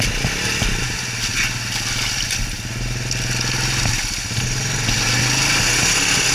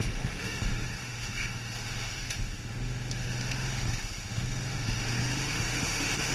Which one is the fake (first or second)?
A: second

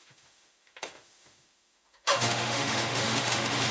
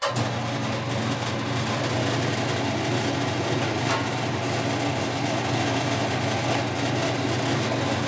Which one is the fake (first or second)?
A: first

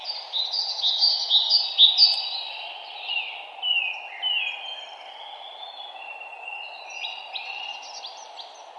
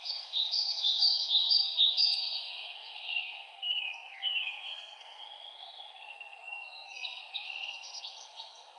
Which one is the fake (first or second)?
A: second